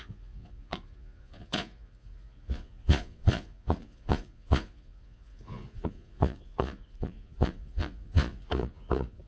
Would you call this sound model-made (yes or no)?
yes